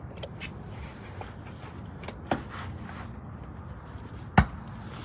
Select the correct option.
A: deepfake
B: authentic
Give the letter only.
B